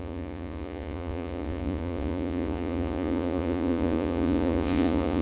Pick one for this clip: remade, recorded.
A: remade